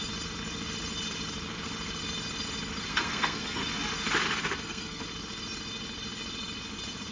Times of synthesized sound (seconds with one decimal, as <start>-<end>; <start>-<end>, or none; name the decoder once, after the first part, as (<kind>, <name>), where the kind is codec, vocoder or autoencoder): 2.8-3.6 (codec, SNAC); 4.6-5.0